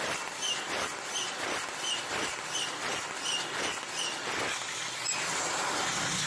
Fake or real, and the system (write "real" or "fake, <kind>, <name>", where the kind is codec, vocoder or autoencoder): real